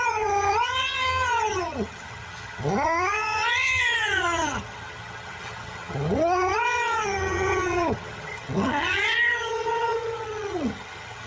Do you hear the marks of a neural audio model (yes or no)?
yes